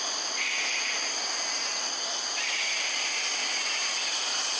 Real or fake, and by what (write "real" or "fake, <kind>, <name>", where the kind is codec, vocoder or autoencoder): real